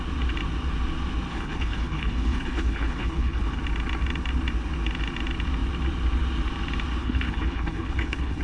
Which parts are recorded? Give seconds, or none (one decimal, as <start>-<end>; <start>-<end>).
0.0-1.3; 3.6-7.0